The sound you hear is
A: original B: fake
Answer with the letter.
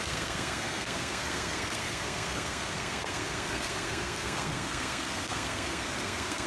B